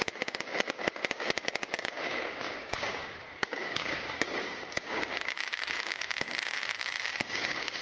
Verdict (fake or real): fake